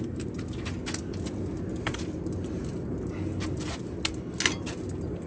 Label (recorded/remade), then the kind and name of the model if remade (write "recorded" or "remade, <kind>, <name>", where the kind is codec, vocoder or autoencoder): recorded